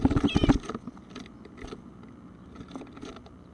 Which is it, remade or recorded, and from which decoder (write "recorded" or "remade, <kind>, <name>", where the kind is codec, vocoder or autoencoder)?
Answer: recorded